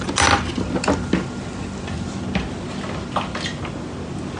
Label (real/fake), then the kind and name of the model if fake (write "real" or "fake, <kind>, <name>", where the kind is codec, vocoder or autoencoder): real